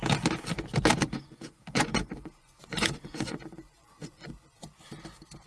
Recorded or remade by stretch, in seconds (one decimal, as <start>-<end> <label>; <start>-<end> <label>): 0.0-1.0 recorded; 1.0-4.3 remade; 4.3-5.5 recorded